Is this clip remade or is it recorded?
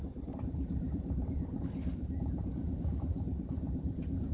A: remade